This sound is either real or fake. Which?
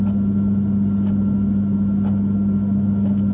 real